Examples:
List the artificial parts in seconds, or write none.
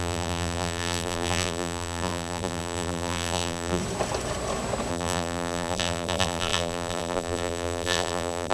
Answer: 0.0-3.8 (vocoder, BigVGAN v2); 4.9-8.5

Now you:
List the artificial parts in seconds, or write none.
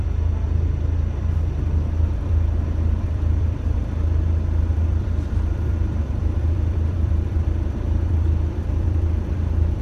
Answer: 0.0-9.8 (vocoder, BigVGAN v2)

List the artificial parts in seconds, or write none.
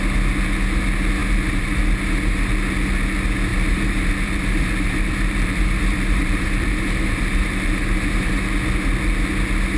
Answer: 1.2-1.8 (vocoder, BigVGAN v2); 3.5-8.3